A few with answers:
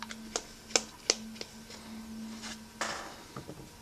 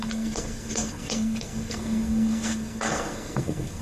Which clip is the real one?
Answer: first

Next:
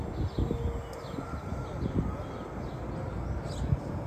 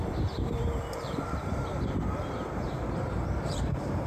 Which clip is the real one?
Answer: first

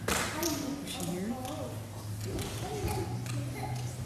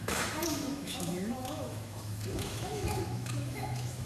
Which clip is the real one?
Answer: first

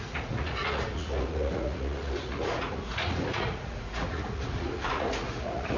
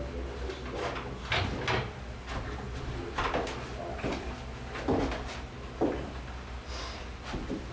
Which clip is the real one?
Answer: second